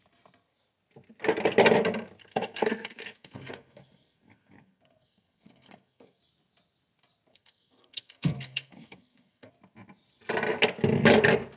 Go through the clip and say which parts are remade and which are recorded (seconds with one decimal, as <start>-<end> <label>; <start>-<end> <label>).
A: 0.0-2.2 recorded; 2.2-6.2 remade; 6.2-7.3 recorded; 7.3-9.5 remade; 9.5-11.6 recorded